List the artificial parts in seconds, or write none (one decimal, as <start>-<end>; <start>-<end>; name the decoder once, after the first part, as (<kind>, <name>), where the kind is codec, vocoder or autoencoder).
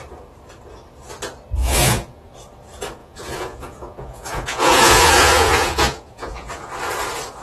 1.6-2.3 (vocoder, Vocos); 3.0-6.7